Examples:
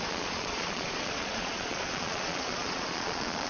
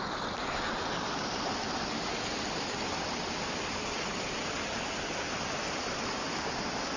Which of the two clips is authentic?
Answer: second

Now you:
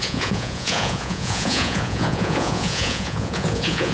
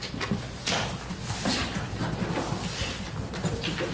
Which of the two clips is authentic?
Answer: second